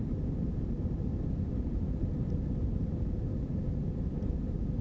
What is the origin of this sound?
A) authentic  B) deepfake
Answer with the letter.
B